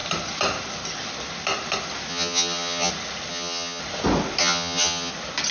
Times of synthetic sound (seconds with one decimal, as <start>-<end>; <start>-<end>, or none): 2.1-2.9; 3.3-3.8; 4.4-5.1